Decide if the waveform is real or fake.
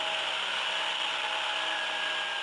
real